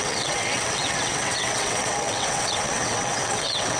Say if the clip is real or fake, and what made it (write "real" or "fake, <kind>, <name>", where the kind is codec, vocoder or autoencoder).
fake, vocoder, WaveNeXt